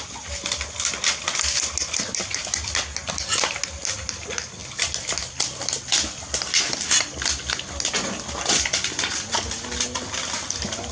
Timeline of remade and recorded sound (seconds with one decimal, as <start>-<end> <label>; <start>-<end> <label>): 0.0-10.9 recorded